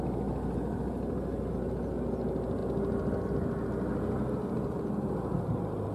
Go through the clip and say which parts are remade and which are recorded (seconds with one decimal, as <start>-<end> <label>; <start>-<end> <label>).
0.0-5.9 recorded